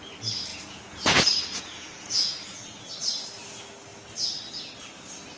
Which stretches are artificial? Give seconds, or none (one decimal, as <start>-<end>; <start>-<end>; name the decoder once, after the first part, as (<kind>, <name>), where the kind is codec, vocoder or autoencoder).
0.5-2.9 (vocoder, Vocos)